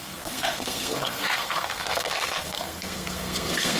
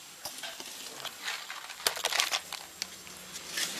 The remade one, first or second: first